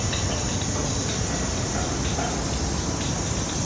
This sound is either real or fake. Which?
real